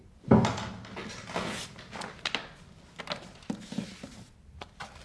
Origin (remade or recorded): recorded